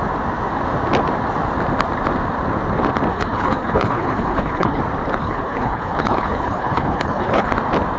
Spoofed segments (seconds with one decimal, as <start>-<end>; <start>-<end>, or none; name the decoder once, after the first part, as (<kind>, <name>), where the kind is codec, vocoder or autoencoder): 3.1-4.8 (codec, HILCodec); 5.2-7.5